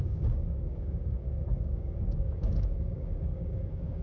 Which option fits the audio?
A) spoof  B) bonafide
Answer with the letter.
A